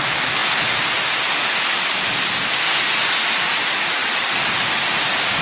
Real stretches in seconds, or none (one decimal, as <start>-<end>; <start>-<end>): 0.0-5.4